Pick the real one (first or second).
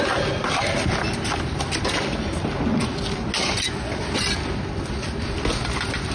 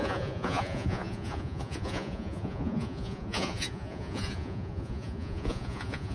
first